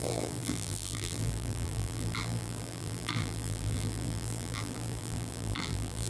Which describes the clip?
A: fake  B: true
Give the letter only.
A